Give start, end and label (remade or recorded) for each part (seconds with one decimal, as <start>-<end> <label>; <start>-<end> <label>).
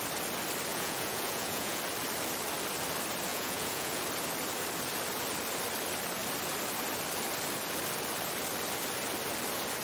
0.0-0.7 recorded; 0.7-1.8 remade; 1.8-3.3 recorded; 3.3-4.0 remade; 4.0-9.8 recorded